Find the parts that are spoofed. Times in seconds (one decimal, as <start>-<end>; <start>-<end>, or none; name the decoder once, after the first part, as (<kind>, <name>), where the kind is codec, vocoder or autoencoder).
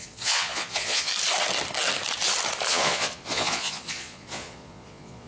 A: 0.0-1.1 (vocoder, Vocos); 2.7-5.3